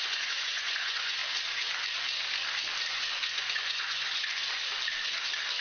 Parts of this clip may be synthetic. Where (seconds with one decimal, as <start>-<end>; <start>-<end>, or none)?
0.0-1.2; 2.9-4.6